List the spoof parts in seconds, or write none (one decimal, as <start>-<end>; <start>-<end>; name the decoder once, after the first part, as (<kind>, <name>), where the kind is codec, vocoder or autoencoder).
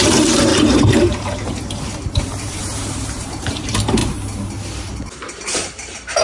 0.0-4.0 (vocoder, BigVGAN v2); 5.4-6.2